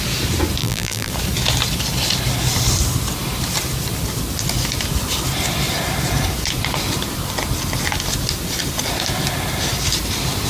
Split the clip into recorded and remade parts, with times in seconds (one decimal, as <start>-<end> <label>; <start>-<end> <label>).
0.0-0.6 recorded; 0.6-1.1 remade; 1.1-10.5 recorded